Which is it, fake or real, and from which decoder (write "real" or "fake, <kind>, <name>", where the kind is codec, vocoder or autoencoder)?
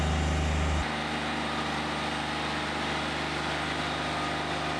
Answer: real